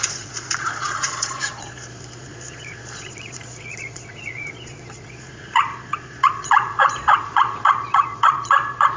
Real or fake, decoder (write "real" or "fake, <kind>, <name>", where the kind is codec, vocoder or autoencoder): fake, vocoder, Vocos